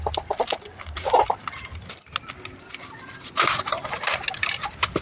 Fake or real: real